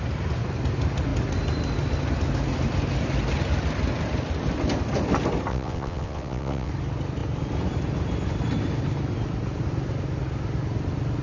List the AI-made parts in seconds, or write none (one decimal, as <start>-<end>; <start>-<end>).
5.5-6.7